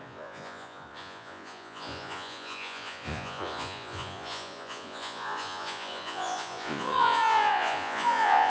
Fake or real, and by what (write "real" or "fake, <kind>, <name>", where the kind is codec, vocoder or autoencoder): fake, vocoder, Vocos